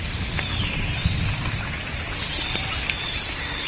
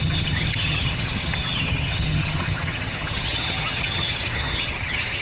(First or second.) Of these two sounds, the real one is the first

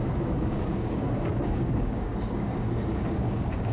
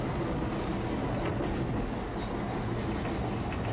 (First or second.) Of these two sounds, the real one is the second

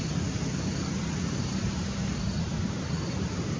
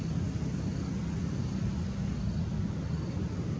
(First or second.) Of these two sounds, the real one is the second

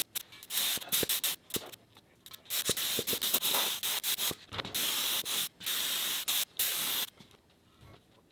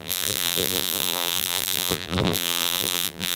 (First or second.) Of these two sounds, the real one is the first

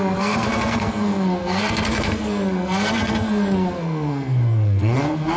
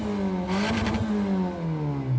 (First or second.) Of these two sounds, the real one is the second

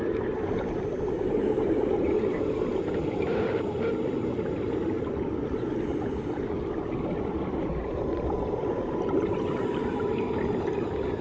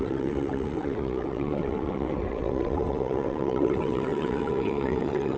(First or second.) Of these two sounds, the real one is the first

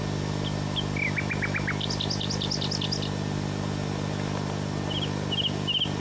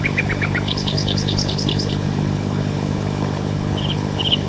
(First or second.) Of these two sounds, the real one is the first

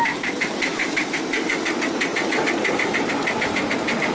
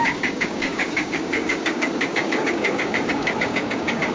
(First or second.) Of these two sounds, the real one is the first